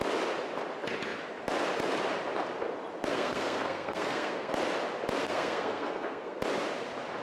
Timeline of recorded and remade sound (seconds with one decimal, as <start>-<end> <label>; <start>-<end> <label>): 0.0-3.1 recorded; 3.1-4.5 remade; 4.5-5.2 recorded; 5.2-6.4 remade; 6.4-7.2 recorded